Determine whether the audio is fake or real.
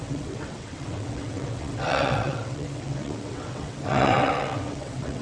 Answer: fake